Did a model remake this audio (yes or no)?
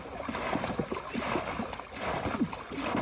no